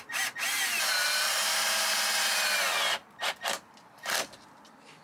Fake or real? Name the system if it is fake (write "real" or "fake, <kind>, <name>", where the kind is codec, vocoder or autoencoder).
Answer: real